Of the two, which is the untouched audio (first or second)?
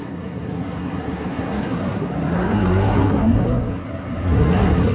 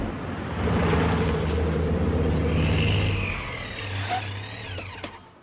second